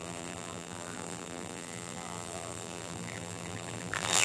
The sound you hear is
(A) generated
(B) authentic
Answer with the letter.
A